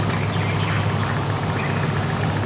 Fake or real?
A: real